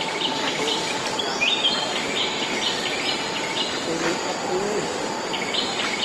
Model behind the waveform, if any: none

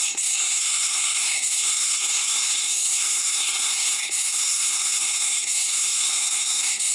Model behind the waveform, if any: codec, SNAC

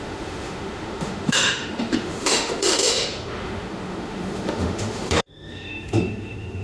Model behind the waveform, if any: autoencoder, DAC-VAE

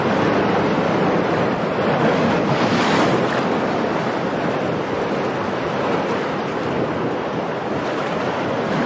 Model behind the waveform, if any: none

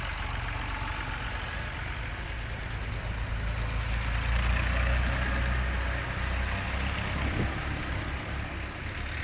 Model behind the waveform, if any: none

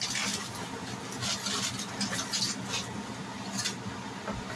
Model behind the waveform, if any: none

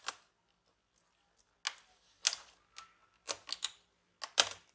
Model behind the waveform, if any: none